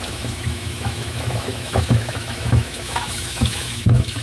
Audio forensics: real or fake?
fake